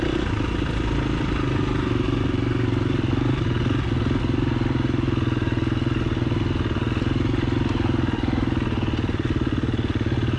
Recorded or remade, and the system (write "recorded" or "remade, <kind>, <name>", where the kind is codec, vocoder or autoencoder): recorded